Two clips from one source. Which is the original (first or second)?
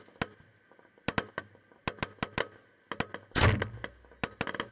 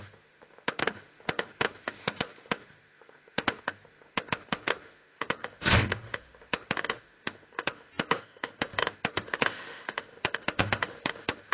first